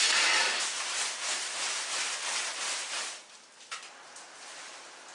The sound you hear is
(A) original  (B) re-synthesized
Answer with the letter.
A